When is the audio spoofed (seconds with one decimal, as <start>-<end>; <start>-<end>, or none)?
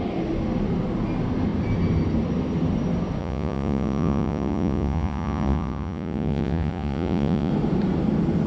3.2-7.5